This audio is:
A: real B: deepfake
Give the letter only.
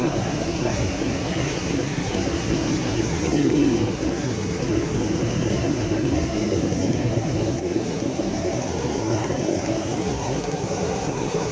B